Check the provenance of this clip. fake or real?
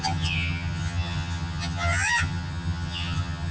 fake